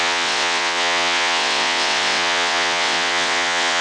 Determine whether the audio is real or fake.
fake